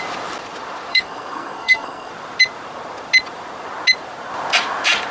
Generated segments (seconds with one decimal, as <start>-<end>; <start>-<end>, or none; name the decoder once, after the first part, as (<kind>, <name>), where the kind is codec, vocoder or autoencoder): 0.9-2.1 (codec, SNAC)